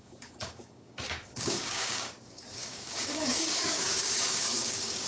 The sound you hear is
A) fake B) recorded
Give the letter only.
A